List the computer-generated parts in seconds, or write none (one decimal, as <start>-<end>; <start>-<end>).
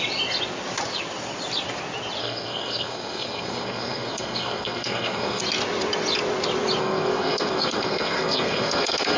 2.2-5.4; 6.8-9.2